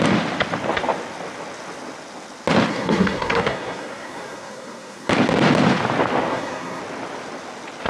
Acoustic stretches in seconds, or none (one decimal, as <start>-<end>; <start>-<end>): 0.0-2.7; 5.1-6.3; 6.8-7.9